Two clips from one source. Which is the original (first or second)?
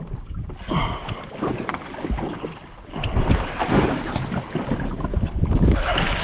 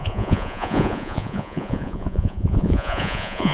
first